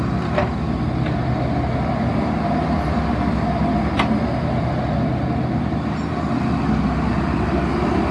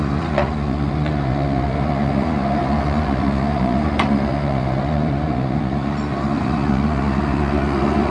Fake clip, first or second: second